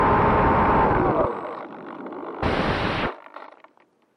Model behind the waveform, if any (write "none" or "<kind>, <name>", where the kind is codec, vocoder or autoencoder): none